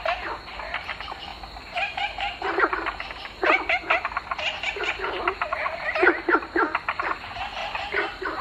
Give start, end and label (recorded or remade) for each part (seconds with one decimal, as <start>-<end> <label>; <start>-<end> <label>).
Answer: 0.0-8.4 recorded